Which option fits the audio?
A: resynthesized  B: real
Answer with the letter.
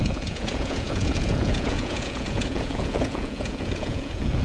A